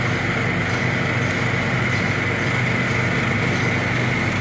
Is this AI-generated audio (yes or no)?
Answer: no